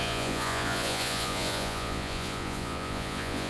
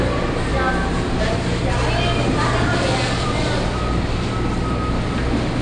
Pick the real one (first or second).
second